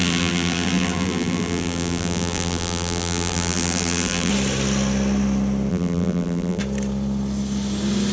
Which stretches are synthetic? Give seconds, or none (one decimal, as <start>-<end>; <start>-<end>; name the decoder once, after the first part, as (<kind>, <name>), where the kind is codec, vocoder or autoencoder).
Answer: 0.0-4.3 (vocoder, BigVGAN v2); 5.7-6.6